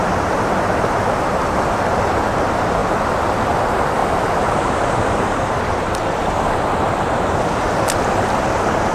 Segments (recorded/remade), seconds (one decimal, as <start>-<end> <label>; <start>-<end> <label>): 0.0-1.8 remade; 1.8-4.0 recorded; 4.0-7.5 remade; 7.5-8.9 recorded